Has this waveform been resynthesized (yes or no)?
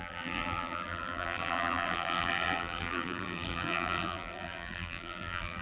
yes